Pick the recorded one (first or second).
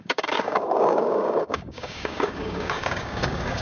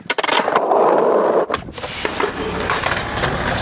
second